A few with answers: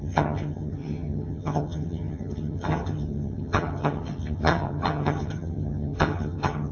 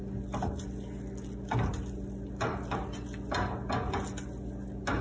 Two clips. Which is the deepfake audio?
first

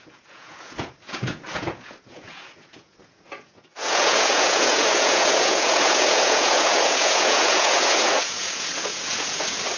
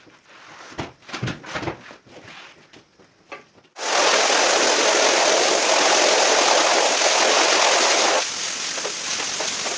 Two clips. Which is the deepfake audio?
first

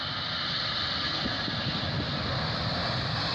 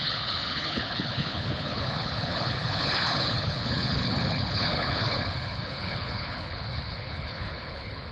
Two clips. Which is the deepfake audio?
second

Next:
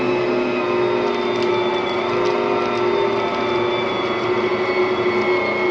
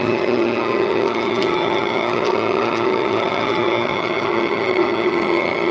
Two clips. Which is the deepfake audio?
second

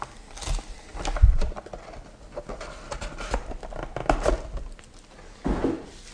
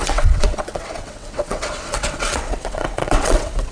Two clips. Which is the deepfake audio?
second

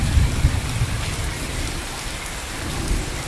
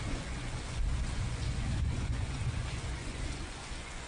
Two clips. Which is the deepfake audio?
second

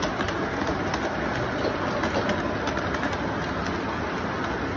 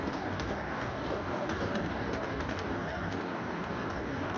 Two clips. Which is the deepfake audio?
second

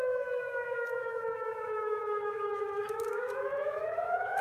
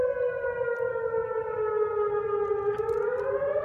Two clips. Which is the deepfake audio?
first